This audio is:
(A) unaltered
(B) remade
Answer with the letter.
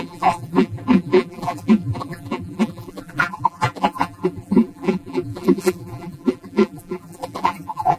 B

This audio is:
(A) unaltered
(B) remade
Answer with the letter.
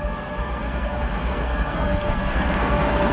B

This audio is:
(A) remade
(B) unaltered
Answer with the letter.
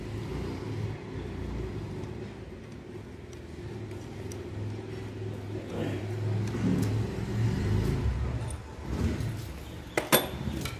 B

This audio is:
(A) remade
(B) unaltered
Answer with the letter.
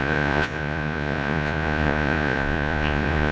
A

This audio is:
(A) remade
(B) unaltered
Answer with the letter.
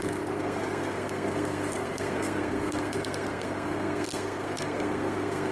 A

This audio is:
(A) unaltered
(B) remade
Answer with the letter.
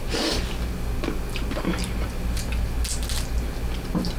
A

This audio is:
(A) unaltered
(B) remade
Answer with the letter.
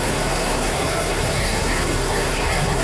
B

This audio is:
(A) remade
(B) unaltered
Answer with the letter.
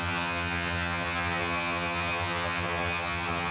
A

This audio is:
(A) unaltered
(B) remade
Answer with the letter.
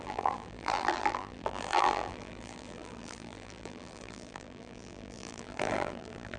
B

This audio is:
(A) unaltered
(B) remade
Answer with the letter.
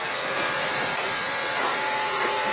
B